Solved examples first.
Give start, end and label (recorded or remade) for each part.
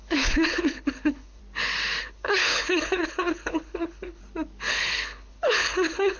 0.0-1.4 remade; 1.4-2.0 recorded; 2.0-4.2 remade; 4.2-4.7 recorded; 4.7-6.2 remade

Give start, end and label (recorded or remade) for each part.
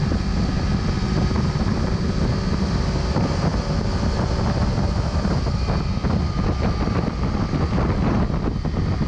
0.0-9.1 recorded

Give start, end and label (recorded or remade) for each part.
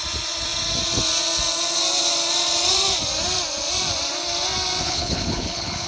0.0-4.8 recorded; 4.8-5.9 remade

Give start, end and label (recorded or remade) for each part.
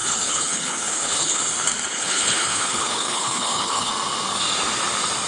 0.0-1.4 remade; 1.4-1.9 recorded; 1.9-3.9 remade; 3.9-5.3 recorded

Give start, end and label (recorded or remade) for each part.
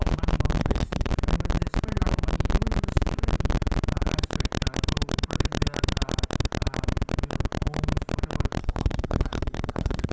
0.0-0.6 recorded; 0.6-1.1 remade; 1.1-8.6 recorded; 8.6-10.1 remade